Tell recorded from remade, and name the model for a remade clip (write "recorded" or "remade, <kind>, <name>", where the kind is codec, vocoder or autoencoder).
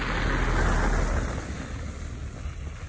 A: recorded